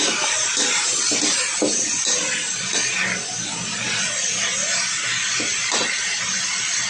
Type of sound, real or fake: real